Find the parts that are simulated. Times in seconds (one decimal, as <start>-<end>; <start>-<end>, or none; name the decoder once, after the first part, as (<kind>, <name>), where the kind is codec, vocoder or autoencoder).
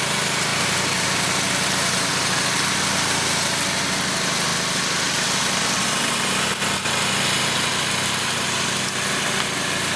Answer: 0.5-2.1 (vocoder, BigVGAN v2)